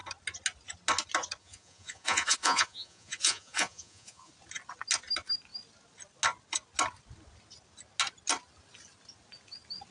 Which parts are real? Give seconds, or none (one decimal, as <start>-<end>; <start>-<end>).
0.0-1.4; 4.3-9.9